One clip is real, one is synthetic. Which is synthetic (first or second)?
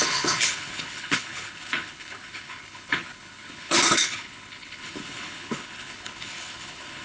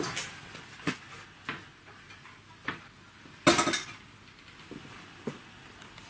first